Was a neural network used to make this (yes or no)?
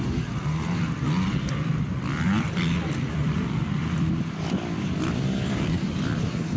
yes